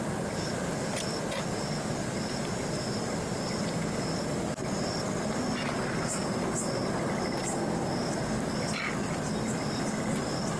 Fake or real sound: real